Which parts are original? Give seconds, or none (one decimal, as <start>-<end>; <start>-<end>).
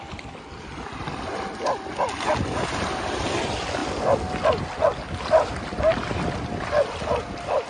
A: 0.0-7.7